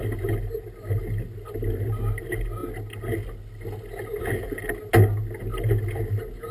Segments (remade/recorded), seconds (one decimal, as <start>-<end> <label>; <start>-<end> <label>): 0.0-6.5 recorded